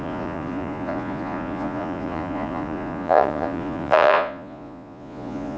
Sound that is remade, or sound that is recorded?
remade